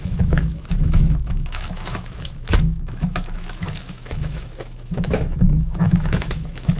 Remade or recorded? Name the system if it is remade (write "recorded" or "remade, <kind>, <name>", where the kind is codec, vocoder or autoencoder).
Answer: remade, autoencoder, DAC-VAE